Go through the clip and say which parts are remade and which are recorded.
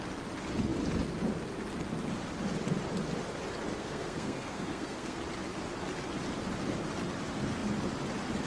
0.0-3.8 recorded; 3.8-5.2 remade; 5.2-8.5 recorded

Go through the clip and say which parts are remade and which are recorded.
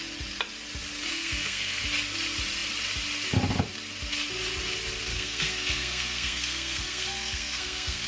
0.0-1.1 recorded; 1.1-1.8 remade; 1.8-5.1 recorded; 5.1-8.1 remade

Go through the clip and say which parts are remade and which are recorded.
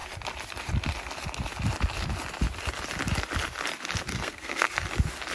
0.0-4.1 recorded; 4.1-4.7 remade; 4.7-5.3 recorded